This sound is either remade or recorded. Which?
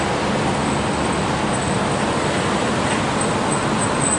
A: recorded